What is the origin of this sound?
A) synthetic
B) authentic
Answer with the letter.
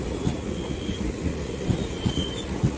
A